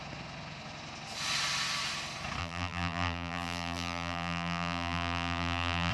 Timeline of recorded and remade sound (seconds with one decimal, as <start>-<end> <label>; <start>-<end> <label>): 0.0-2.4 recorded; 2.4-5.9 remade